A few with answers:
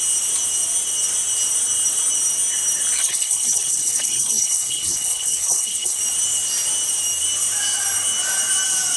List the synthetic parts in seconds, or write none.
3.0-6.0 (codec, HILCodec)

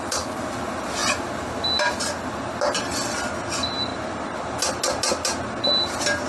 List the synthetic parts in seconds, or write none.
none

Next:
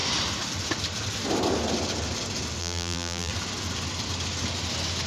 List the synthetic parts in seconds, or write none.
2.6-3.3 (vocoder, BigVGAN v2)

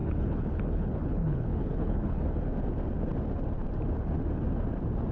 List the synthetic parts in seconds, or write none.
0.0-2.4 (codec, HILCodec)

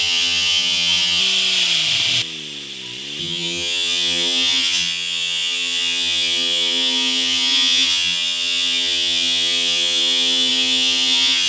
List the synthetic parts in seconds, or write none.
0.0-1.2 (vocoder, HiFi-GAN); 3.2-11.5

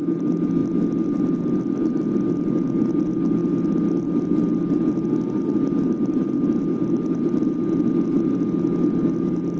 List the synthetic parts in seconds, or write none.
none

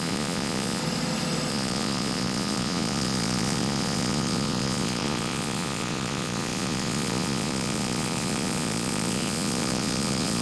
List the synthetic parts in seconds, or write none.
0.0-0.8 (vocoder, Vocos); 1.5-10.4